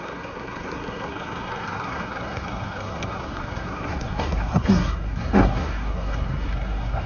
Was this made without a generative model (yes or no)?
no